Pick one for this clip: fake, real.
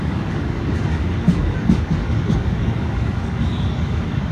fake